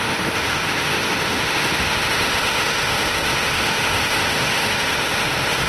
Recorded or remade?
remade